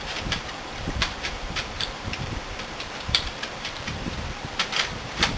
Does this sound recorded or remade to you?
remade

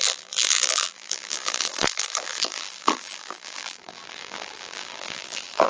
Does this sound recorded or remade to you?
remade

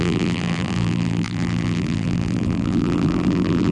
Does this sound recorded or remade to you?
remade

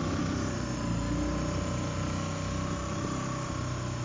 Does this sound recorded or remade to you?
recorded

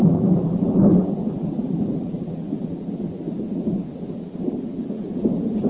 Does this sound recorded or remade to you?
remade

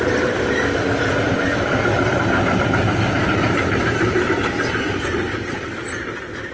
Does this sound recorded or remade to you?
remade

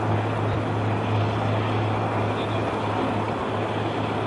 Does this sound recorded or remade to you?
recorded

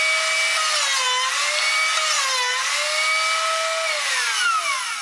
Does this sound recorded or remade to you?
recorded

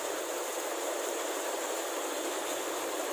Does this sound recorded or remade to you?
remade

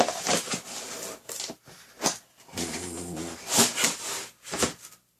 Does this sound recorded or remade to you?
remade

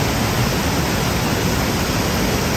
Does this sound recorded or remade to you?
recorded